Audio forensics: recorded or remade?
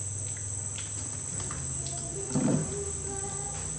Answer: recorded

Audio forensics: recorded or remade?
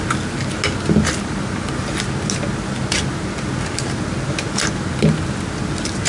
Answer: recorded